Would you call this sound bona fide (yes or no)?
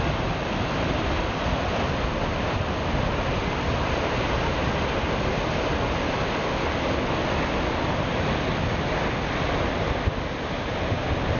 yes